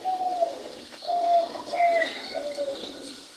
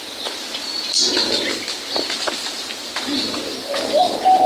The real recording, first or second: second